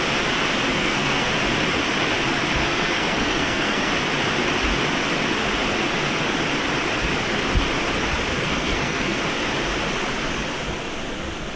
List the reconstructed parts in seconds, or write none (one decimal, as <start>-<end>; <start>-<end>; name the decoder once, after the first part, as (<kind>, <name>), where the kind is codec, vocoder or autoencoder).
0.7-1.3 (codec, SNAC); 2.6-3.9; 8.3-9.2